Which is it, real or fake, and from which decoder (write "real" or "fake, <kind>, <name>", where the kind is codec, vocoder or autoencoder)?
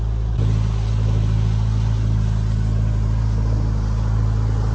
real